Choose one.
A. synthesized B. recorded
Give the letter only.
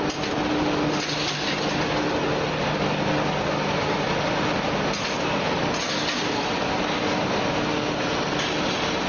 B